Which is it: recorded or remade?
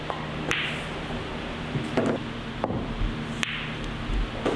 recorded